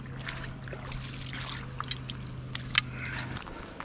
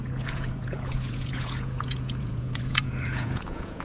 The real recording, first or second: first